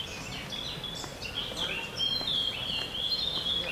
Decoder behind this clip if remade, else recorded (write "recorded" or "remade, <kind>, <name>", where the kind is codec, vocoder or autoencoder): recorded